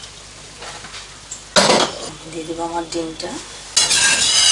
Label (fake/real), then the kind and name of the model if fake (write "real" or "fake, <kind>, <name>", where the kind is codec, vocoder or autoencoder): real